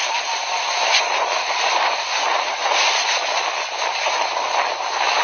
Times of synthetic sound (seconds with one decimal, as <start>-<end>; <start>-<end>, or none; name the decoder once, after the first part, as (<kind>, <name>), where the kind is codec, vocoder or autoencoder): 0.0-2.1 (vocoder, BigVGAN v2); 2.6-4.3